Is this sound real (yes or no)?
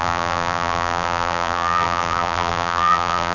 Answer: no